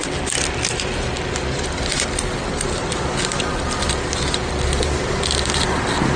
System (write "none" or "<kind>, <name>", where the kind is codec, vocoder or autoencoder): none